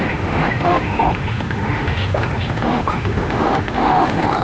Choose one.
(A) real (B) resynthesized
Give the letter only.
B